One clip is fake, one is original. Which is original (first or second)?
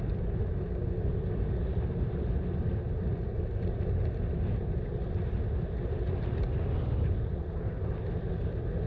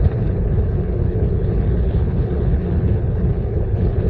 first